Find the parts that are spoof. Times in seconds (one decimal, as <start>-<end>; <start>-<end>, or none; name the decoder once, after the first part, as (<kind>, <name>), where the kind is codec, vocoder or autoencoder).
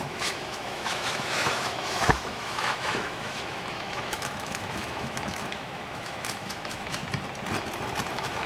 0.0-7.0 (autoencoder, DAC-VAE); 8.1-8.5